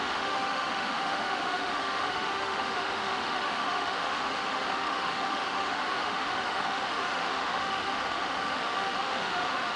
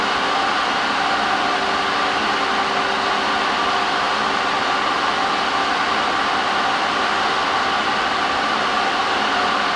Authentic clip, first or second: second